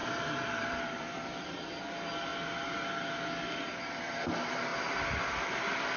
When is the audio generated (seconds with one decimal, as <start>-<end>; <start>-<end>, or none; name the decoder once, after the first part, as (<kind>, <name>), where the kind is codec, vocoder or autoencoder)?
0.0-2.3 (vocoder, BigVGAN v2); 3.8-4.7; 5.3-6.0